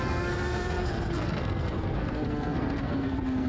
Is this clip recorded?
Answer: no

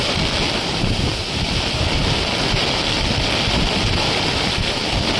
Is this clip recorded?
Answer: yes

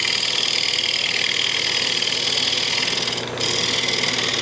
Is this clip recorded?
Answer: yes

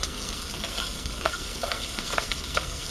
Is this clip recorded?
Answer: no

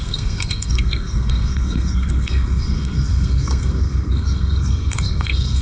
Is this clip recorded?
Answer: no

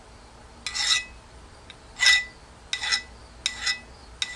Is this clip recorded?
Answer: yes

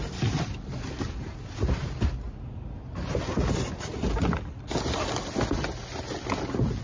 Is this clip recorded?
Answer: yes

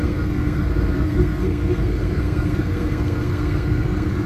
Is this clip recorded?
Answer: no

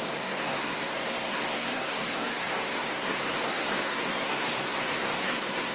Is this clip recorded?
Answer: no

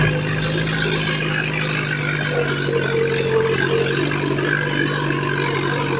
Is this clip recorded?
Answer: yes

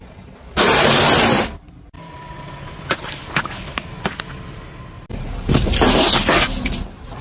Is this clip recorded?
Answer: yes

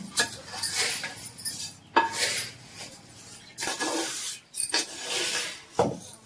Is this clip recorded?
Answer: yes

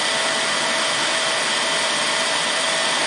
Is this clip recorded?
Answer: yes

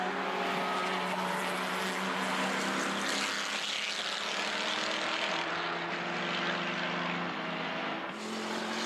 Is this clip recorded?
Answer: yes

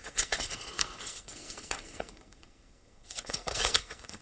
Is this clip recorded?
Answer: no